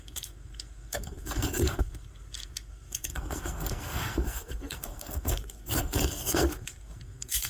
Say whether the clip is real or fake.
fake